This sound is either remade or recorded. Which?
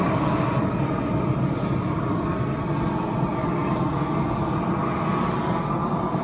recorded